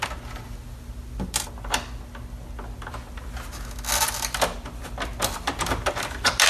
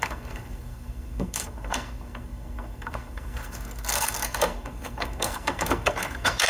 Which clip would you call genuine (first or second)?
first